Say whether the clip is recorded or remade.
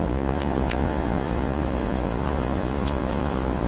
remade